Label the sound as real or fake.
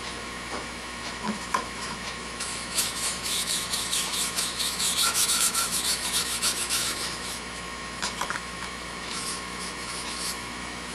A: fake